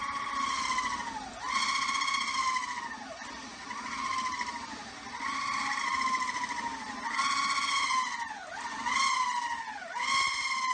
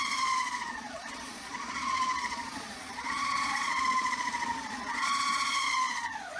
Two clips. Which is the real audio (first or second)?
first